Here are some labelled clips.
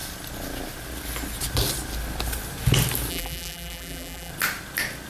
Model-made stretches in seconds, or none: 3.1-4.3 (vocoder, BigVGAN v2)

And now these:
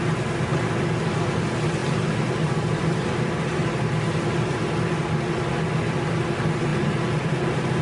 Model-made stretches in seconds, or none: 1.8-3.4 (vocoder, BigVGAN v2)

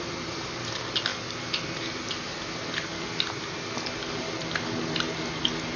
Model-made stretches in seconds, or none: none

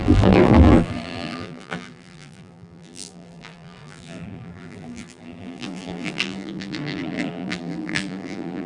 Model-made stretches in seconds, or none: 0.0-8.7 (vocoder, BigVGAN v2)

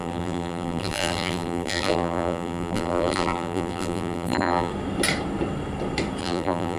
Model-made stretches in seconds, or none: 0.0-4.7 (vocoder, BigVGAN v2); 6.2-6.8

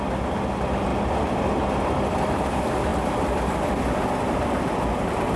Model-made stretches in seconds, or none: 0.9-1.5 (vocoder, BigVGAN v2); 2.9-5.4